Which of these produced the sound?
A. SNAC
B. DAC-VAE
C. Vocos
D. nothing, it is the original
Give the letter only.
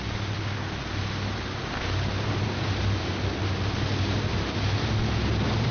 D